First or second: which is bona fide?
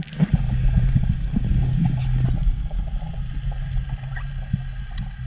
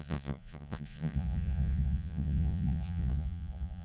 first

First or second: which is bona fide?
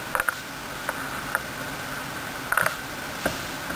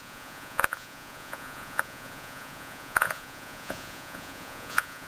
first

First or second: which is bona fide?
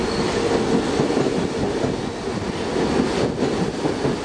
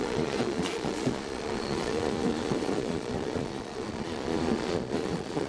first